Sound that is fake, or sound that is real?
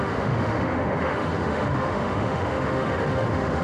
fake